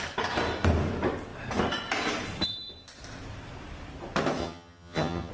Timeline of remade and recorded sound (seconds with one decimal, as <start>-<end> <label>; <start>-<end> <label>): 0.0-4.4 recorded; 4.4-5.3 remade